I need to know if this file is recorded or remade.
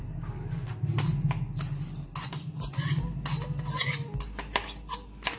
recorded